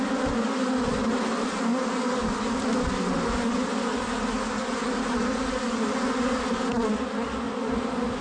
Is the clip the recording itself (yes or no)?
yes